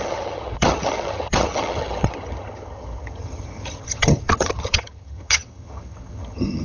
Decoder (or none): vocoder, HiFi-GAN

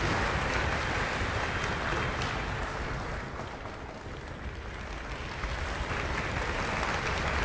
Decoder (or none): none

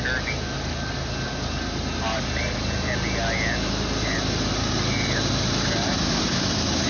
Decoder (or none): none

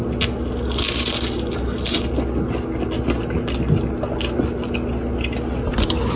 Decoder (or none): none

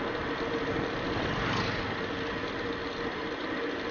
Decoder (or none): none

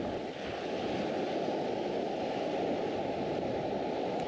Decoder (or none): none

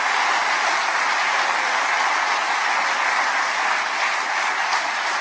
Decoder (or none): none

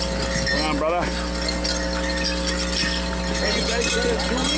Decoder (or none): none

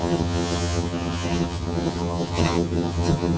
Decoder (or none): vocoder, HiFi-GAN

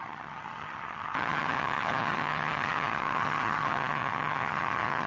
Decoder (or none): vocoder, HiFi-GAN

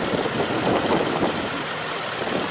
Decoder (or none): none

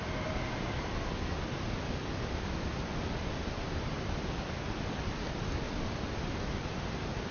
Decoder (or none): none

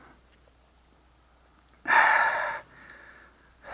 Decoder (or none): none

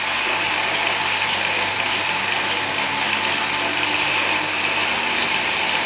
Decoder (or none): none